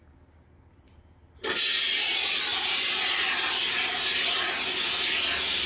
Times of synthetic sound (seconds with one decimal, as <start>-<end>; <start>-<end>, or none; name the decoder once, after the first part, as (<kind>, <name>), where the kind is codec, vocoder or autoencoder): 2.5-3.0 (vocoder, BigVGAN v2)